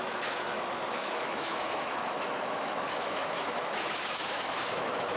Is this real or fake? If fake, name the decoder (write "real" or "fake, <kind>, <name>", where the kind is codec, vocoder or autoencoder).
fake, autoencoder, DAC-VAE